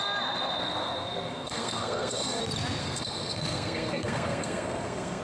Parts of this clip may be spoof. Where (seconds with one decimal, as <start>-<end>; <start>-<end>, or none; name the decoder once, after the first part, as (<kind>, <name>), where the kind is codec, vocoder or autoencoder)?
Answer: 0.6-2.4 (codec, SNAC); 2.8-5.2

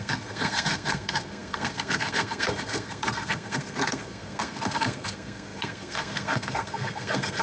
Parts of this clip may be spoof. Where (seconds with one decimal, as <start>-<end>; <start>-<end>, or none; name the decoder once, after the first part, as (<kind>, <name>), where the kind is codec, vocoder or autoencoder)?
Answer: 0.0-7.4 (codec, SNAC)